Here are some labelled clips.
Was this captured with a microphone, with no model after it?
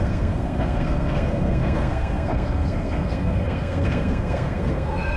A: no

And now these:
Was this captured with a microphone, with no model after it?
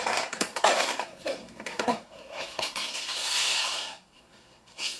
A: no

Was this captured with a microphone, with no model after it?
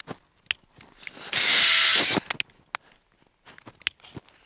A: yes